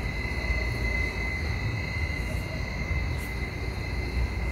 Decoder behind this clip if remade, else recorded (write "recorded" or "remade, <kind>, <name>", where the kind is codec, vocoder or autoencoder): recorded